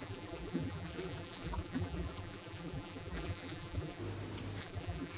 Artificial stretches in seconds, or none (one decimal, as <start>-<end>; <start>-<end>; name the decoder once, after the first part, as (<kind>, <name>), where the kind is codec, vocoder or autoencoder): 0.0-4.0 (vocoder, BigVGAN v2); 4.6-5.2